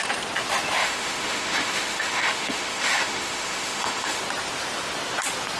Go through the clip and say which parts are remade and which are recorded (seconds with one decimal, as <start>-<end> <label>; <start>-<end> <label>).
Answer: 0.0-0.8 recorded; 0.8-4.2 remade; 4.2-5.6 recorded